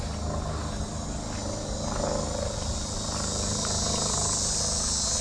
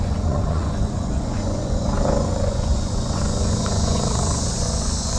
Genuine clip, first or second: first